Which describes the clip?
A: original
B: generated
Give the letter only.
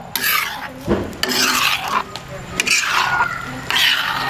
A